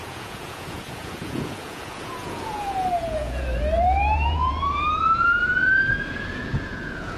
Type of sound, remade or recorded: remade